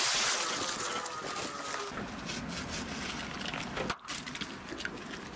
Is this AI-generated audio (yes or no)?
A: no